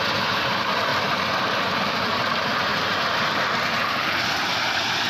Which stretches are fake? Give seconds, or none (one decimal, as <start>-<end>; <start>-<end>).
0.0-5.1